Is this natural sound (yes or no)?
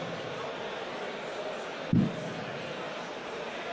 yes